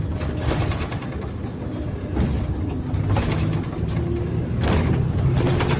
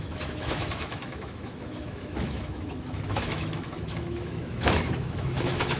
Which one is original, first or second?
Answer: first